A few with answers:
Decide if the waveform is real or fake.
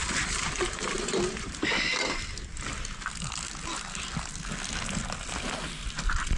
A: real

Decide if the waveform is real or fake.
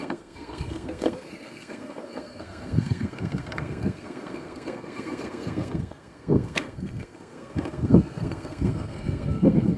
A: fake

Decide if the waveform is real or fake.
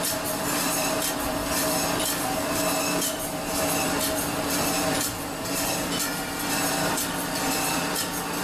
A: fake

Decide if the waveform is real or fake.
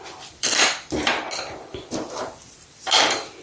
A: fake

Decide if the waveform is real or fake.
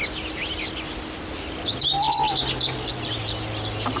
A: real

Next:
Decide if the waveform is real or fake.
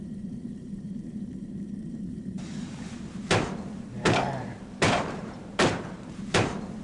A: fake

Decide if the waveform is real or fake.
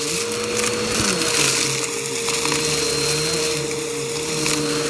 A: real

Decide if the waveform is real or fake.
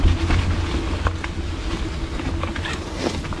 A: real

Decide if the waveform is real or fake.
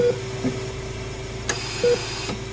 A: real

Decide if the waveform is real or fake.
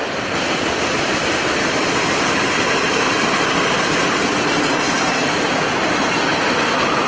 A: real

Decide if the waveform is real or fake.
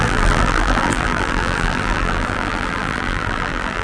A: fake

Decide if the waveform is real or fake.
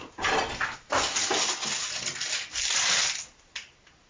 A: real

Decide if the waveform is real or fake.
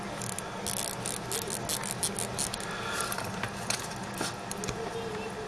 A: real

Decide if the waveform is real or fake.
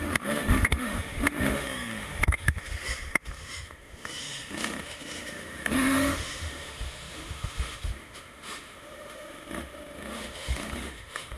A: fake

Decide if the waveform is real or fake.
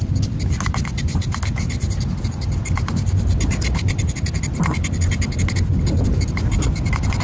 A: real